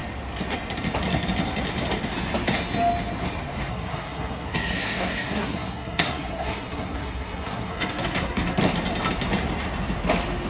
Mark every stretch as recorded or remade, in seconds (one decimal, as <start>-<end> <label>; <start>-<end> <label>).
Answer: 0.0-3.7 recorded; 3.7-8.6 remade; 8.6-10.5 recorded